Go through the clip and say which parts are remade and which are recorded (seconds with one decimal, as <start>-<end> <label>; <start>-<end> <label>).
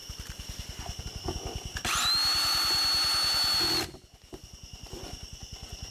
0.0-1.0 remade; 1.0-5.9 recorded